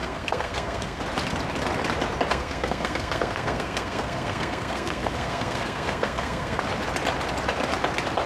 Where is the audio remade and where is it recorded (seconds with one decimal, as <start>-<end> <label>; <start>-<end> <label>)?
0.0-1.0 remade; 1.0-2.3 recorded; 2.3-6.6 remade; 6.6-8.3 recorded